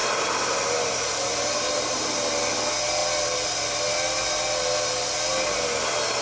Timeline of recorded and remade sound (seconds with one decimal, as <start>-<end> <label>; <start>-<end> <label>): 0.0-2.1 remade; 2.1-6.2 recorded